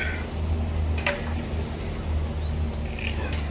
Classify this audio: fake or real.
real